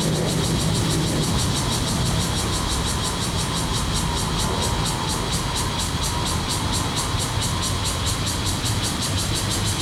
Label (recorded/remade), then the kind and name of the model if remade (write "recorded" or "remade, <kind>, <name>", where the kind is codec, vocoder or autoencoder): remade, vocoder, BigVGAN v2